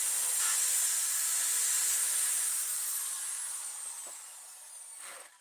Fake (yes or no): no